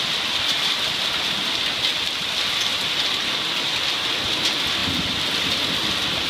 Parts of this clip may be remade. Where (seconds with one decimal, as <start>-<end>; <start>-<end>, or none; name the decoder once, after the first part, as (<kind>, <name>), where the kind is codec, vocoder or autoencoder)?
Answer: none

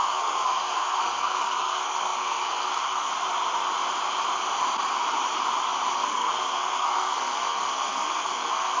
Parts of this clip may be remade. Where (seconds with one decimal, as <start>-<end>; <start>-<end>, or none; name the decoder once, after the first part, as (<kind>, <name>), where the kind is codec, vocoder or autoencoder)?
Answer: 0.0-3.1 (codec, SNAC); 5.9-8.8

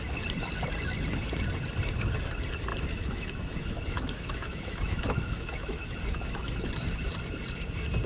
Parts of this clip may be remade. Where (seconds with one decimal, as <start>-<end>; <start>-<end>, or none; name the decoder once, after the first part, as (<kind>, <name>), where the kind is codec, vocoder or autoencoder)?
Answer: 2.7-6.7 (autoencoder, DAC-VAE)

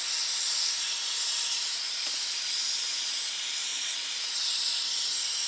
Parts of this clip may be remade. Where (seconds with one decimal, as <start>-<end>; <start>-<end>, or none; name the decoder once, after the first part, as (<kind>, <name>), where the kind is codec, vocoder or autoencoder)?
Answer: none